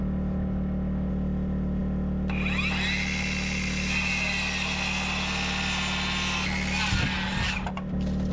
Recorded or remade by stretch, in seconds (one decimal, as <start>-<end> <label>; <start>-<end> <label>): 0.0-8.3 recorded